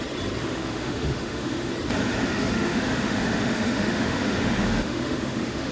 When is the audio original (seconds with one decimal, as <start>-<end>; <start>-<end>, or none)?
0.0-0.4; 1.7-2.3